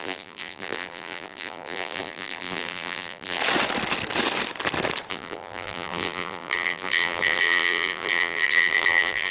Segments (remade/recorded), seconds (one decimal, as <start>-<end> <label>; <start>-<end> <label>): 0.0-3.4 remade; 3.4-5.1 recorded; 5.1-9.3 remade